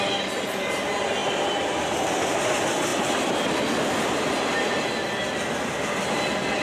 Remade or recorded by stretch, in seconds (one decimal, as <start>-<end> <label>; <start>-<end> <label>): 0.0-1.2 recorded; 1.2-2.4 remade; 2.4-2.9 recorded; 2.9-3.6 remade; 3.6-6.6 recorded